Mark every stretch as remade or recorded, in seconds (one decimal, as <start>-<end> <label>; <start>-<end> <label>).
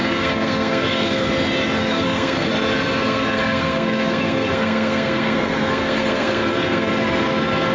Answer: 0.0-1.3 remade; 1.3-1.8 recorded; 1.8-2.5 remade; 2.5-3.0 recorded; 3.0-6.9 remade; 6.9-7.7 recorded